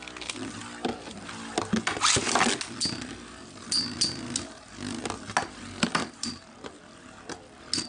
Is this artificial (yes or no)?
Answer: no